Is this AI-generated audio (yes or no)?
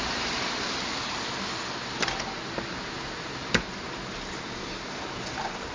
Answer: no